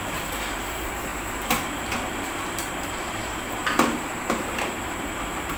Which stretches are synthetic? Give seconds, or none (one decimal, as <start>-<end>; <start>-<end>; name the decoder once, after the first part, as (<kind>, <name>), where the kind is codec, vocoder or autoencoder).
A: 0.0-5.6 (vocoder, BigVGAN v2)